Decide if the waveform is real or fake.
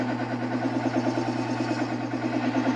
real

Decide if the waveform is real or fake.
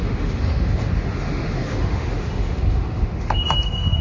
fake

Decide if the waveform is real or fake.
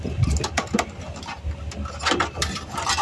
real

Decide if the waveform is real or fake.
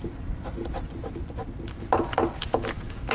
real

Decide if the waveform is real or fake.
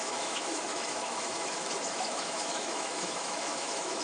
fake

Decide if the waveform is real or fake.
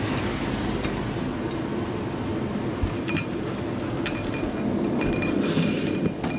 real